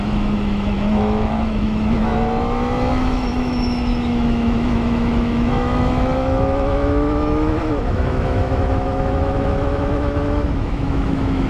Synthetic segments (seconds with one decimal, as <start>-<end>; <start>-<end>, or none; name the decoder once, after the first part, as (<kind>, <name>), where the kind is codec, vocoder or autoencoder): 0.0-2.1 (autoencoder, DAC-VAE); 2.9-11.5